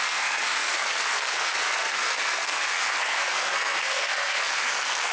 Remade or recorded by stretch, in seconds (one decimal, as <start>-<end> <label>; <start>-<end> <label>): 0.0-5.1 remade